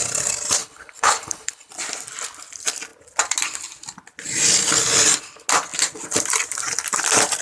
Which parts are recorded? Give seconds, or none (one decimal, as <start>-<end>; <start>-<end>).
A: 0.0-0.6; 1.7-7.4